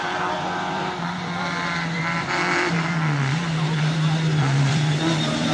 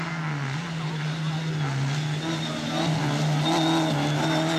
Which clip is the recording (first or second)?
second